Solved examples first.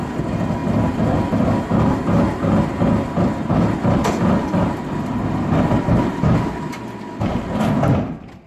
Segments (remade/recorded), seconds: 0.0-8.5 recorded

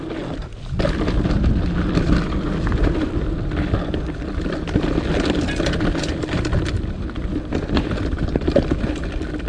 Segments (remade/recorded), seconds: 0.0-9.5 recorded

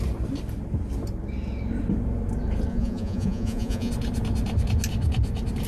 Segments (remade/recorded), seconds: 0.0-2.7 recorded; 2.7-3.9 remade; 3.9-5.7 recorded

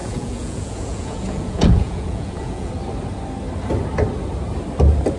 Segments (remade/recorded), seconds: 0.0-2.7 remade; 2.7-5.2 recorded

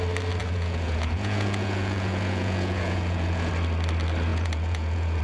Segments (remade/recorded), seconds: 0.0-0.4 recorded; 0.4-3.5 remade; 3.5-4.3 recorded; 4.3-5.2 remade

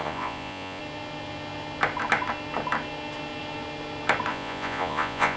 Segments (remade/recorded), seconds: 0.0-0.8 remade; 0.8-4.3 recorded; 4.3-5.4 remade